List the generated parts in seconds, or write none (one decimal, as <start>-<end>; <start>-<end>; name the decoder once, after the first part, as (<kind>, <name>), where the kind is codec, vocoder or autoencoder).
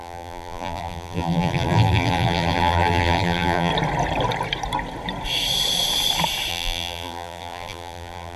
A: 0.0-3.7 (vocoder, BigVGAN v2); 6.5-8.4